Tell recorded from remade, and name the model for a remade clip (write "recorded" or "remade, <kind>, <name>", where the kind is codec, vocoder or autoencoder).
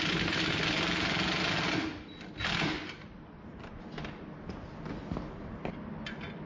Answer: recorded